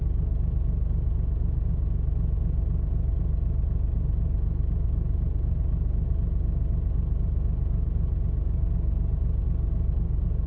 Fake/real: real